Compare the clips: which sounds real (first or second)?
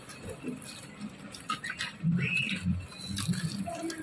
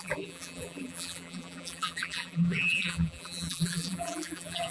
first